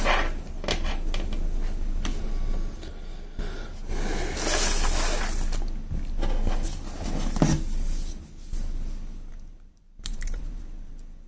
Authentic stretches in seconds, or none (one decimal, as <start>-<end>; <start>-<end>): 0.0-9.3; 10.9-11.3